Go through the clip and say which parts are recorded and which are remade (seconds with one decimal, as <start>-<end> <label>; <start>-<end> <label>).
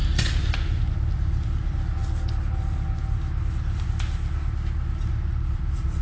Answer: 0.0-0.9 recorded; 0.9-2.0 remade; 2.0-5.1 recorded; 5.1-6.0 remade